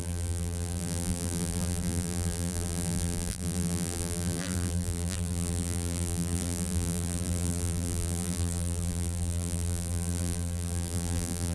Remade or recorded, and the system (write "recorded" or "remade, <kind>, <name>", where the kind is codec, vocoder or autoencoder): remade, vocoder, BigVGAN v2